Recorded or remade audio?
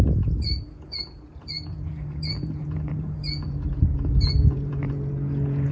remade